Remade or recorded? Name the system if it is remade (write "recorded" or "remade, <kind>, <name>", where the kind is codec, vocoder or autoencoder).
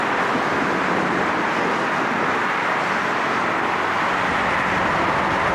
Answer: recorded